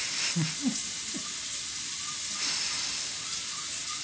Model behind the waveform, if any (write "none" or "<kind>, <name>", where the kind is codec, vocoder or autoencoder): none